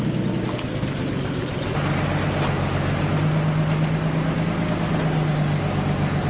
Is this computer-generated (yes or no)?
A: no